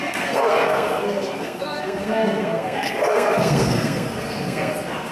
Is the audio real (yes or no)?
no